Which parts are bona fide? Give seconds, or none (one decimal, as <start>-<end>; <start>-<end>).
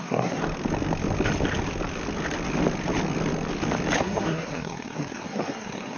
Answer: 0.4-4.0